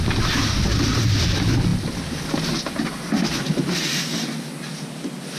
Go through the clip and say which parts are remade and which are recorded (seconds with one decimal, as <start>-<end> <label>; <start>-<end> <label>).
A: 0.0-5.4 recorded

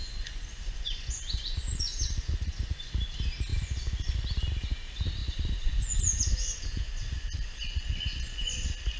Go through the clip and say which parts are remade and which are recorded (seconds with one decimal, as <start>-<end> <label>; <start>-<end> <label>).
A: 0.0-2.9 remade; 2.9-3.5 recorded; 3.5-4.3 remade; 4.3-5.2 recorded; 5.2-8.6 remade; 8.6-9.0 recorded